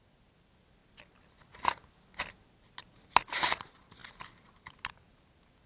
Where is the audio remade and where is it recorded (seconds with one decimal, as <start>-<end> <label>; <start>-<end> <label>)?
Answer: 0.0-5.7 recorded